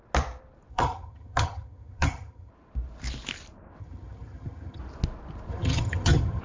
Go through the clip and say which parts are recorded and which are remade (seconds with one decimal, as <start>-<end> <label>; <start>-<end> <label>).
0.0-0.7 recorded; 0.7-2.5 remade; 2.5-3.8 recorded; 3.8-4.8 remade; 4.8-5.5 recorded; 5.5-6.4 remade